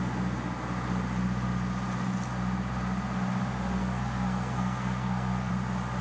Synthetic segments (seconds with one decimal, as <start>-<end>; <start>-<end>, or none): 3.8-5.5